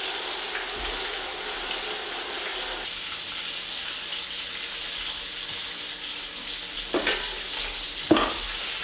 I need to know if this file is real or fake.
real